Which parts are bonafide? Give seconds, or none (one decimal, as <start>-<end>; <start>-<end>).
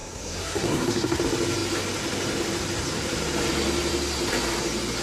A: 1.2-5.0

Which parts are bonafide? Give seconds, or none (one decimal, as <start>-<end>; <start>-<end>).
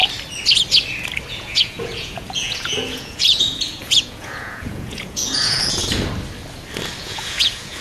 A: 0.0-1.3; 5.8-7.0